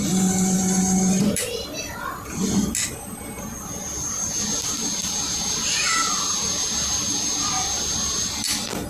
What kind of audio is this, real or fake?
real